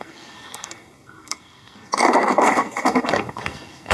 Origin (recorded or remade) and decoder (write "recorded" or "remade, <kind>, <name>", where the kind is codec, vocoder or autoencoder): remade, codec, SNAC